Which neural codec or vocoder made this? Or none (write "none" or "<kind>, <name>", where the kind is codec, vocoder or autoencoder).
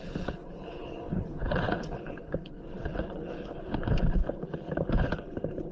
codec, HILCodec